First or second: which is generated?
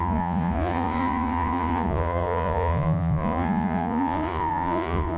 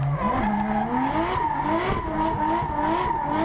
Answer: first